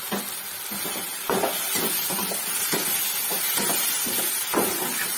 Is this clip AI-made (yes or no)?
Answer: no